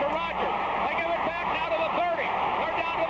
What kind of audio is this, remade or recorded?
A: remade